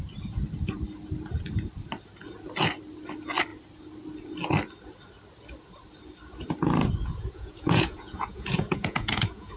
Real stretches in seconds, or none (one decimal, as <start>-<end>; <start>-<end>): 0.0-7.0